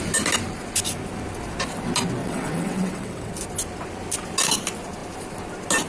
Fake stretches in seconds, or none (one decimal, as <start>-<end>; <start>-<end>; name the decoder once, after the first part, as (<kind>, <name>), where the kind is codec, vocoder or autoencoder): 2.2-3.3 (vocoder, WaveNeXt)